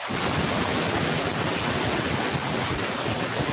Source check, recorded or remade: recorded